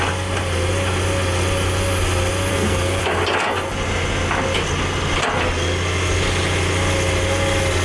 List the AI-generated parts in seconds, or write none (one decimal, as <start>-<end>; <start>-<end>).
2.5-3.0